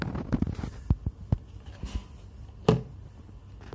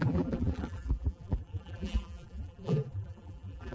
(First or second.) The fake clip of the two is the second